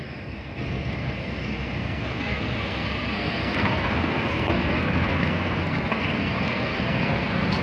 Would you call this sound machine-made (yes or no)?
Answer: yes